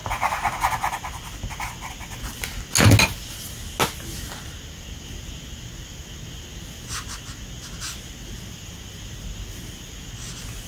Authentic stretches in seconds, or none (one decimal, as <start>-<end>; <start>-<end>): 0.0-10.7